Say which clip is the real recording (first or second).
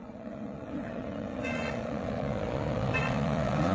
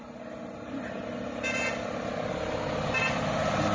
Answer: second